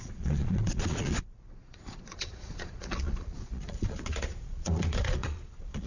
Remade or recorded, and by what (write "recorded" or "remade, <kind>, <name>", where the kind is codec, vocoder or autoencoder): remade, vocoder, Vocos